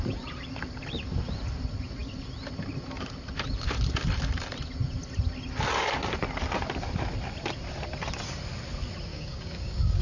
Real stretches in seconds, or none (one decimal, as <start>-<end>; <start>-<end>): 0.0-9.1

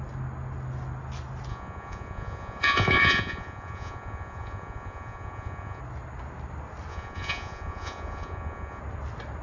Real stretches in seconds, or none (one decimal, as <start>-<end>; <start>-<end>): 0.0-1.5; 5.8-6.9; 8.8-9.4